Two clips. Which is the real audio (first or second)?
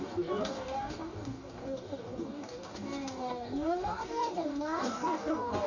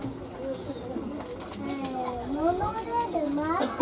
second